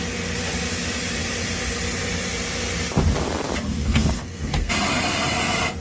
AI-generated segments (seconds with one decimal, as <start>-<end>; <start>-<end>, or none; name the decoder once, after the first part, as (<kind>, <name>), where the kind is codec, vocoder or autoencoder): 3.8-4.7 (codec, SNAC)